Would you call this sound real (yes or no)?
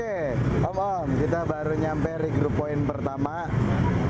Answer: yes